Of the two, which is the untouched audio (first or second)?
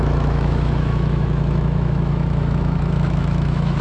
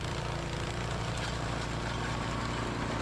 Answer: second